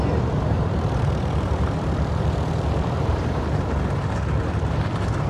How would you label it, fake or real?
fake